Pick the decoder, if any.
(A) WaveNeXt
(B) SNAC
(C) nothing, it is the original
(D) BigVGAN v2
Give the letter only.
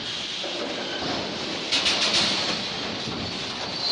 C